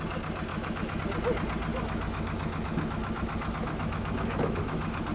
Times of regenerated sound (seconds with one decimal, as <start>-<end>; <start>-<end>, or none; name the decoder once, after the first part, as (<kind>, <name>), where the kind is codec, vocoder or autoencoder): 0.5-1.0 (autoencoder, DAC-VAE); 1.7-5.1